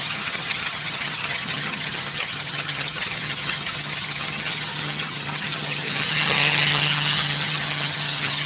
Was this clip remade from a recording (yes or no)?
yes